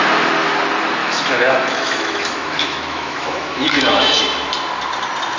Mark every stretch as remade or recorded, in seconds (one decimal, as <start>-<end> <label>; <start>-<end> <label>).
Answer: 0.0-1.0 recorded; 1.0-4.2 remade; 4.2-5.4 recorded